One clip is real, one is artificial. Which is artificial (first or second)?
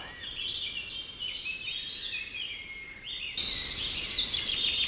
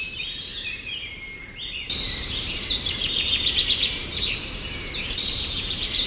second